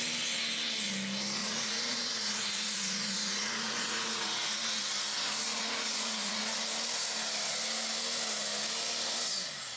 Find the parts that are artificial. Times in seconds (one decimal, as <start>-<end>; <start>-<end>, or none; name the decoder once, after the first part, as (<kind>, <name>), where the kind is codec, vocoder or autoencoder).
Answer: 1.4-4.8 (vocoder, Vocos); 5.5-6.4